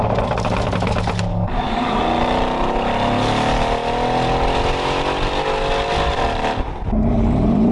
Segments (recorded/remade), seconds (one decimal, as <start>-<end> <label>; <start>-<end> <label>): 0.0-1.3 recorded; 1.3-2.0 remade; 2.0-7.7 recorded